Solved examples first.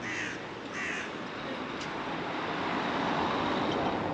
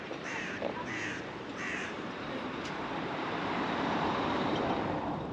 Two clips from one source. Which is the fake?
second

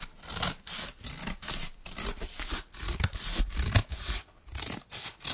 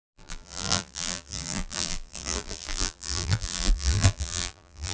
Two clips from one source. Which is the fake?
second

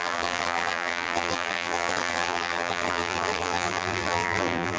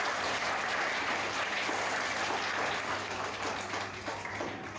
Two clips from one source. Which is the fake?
first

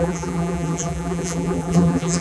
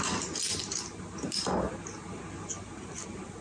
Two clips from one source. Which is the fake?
first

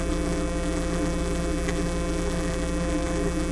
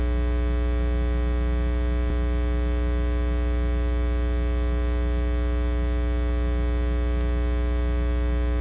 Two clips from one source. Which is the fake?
first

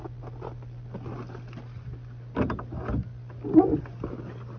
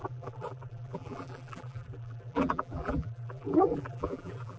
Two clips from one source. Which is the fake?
second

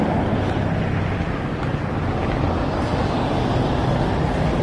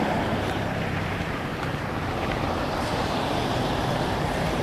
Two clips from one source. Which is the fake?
second